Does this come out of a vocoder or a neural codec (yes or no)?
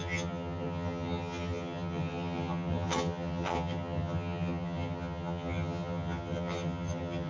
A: yes